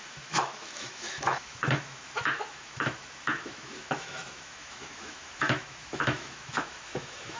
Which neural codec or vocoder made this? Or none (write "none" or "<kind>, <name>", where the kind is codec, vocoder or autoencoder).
autoencoder, DAC-VAE